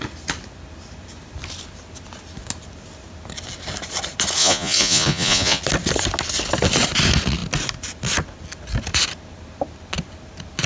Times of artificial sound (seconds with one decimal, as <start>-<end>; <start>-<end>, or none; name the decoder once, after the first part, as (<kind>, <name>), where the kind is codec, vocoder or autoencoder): 4.4-5.6 (vocoder, Vocos)